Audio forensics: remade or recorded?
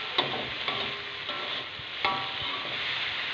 recorded